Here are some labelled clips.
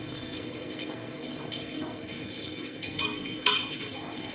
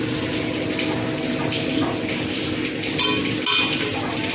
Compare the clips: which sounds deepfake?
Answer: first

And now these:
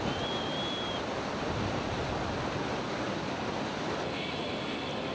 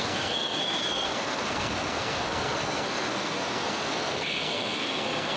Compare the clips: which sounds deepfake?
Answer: second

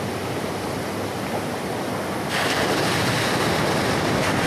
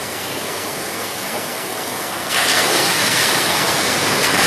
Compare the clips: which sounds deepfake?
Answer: second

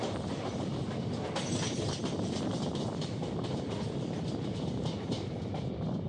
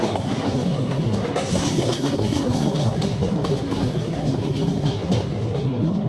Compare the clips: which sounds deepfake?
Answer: second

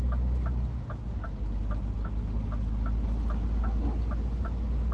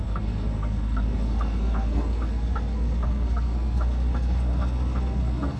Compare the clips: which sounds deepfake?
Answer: second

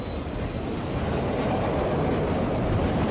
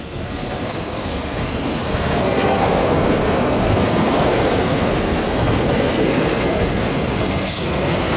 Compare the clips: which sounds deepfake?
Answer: second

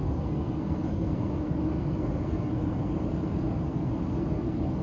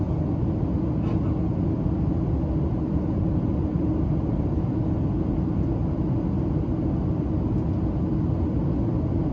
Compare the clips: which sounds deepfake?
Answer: first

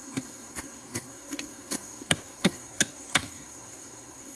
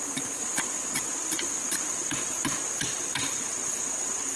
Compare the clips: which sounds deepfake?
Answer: first